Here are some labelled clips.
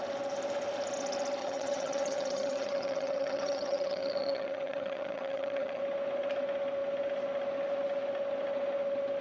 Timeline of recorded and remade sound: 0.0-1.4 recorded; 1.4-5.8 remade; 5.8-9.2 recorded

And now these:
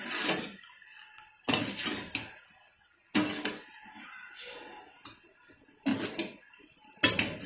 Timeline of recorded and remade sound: 0.0-7.5 recorded

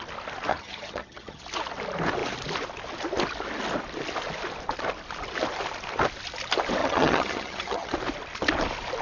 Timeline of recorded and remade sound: 0.0-0.5 recorded; 0.5-1.4 remade; 1.4-6.8 recorded; 6.8-7.9 remade; 7.9-9.0 recorded

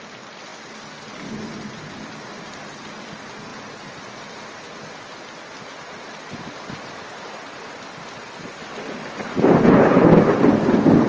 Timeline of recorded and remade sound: 0.0-11.1 recorded

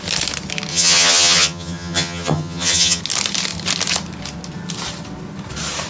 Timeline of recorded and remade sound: 0.0-0.7 recorded; 0.7-3.0 remade; 3.0-5.9 recorded

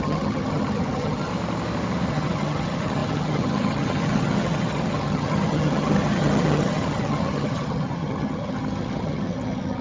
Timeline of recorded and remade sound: 0.0-1.3 remade; 1.3-2.1 recorded; 2.1-9.8 remade

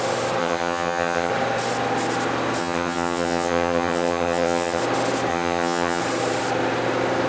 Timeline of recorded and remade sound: 0.0-0.4 recorded; 0.4-1.3 remade; 1.3-2.6 recorded; 2.6-4.8 remade; 4.8-5.3 recorded; 5.3-6.0 remade; 6.0-7.3 recorded